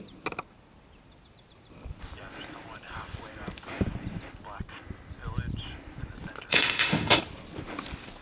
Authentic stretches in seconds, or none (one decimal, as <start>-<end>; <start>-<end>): 0.0-6.5; 7.2-8.2